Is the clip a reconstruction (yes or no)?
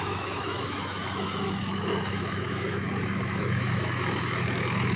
yes